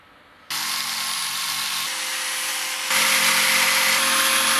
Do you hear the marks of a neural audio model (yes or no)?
no